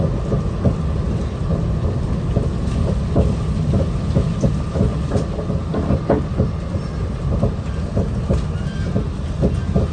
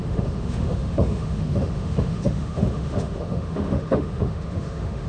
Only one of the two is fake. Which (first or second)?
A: second